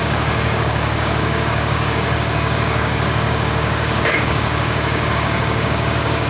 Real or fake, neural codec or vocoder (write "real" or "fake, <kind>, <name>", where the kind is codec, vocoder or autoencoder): fake, codec, DAC